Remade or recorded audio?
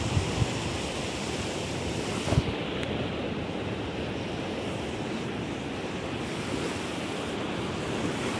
recorded